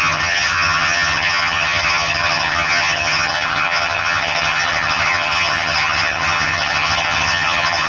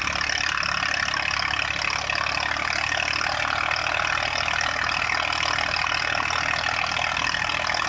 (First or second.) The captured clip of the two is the second